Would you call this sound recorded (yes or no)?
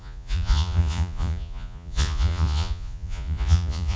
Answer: no